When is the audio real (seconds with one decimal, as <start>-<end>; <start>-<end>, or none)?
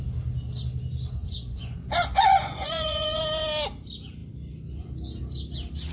0.0-1.2; 3.2-5.9